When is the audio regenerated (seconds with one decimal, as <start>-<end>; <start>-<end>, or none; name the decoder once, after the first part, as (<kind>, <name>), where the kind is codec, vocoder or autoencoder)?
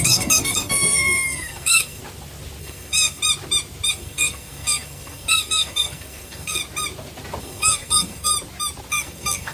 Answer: 0.0-2.0 (codec, SNAC); 2.6-3.2; 3.9-6.6; 7.4-8.3; 8.9-9.5